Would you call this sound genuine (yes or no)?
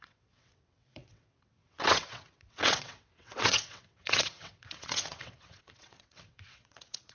no